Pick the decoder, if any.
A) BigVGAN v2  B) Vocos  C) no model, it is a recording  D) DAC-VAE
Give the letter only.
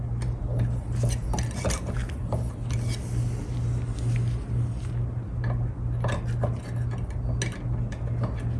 C